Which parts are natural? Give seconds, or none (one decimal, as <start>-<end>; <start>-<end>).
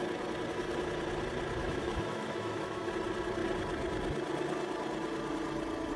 0.0-1.6; 2.9-6.0